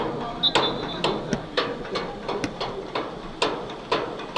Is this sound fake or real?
real